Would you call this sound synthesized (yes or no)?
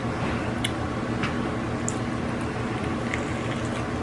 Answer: no